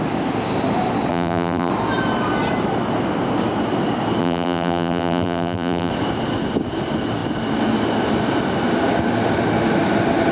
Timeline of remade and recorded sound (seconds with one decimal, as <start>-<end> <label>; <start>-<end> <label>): 0.0-1.1 recorded; 1.1-1.7 remade; 1.7-4.2 recorded; 4.2-5.9 remade; 5.9-10.3 recorded